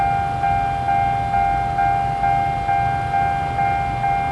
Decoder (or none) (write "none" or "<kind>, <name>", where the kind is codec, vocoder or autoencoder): none